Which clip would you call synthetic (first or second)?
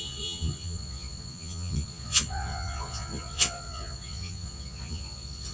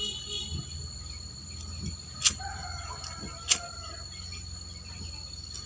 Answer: first